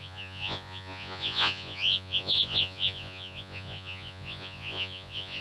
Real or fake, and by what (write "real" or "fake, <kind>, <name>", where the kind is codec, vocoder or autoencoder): fake, vocoder, Vocos